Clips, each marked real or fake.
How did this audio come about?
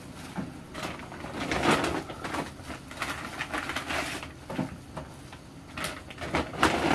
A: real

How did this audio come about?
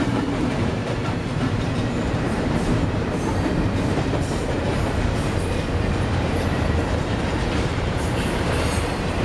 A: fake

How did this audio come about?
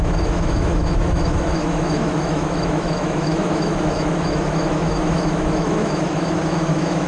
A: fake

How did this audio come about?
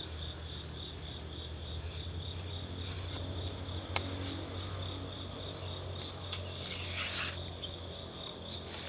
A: real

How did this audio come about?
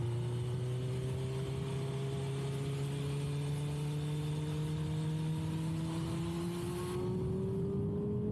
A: real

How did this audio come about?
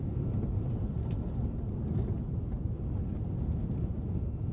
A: real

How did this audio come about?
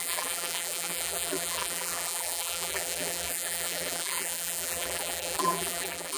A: fake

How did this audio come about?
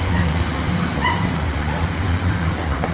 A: fake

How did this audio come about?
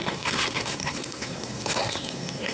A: fake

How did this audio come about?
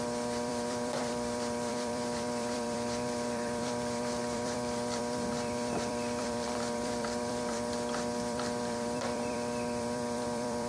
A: fake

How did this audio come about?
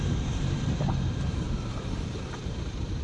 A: fake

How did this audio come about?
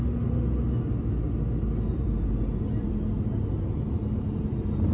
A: real